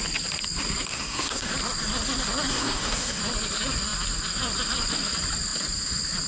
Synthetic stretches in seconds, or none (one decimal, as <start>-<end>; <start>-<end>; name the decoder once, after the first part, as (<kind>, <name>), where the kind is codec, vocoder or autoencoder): 0.9-1.5 (codec, SNAC); 2.5-3.2